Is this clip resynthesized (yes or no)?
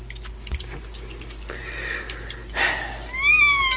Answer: no